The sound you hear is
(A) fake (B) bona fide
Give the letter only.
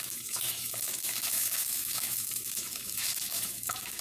A